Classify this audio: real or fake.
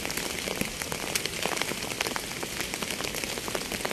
real